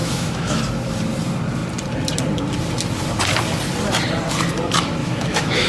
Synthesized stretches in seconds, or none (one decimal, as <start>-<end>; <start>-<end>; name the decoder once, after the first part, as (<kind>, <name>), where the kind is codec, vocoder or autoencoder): 0.0-0.6 (autoencoder, DAC-VAE); 5.0-5.7